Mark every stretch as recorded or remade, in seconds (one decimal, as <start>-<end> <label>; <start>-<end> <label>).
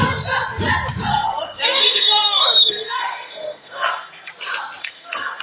0.0-1.1 recorded; 1.1-4.3 remade; 4.3-4.8 recorded; 4.8-5.4 remade